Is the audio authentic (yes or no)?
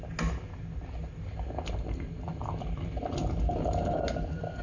yes